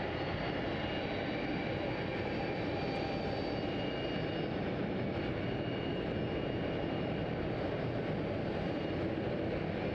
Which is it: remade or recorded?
recorded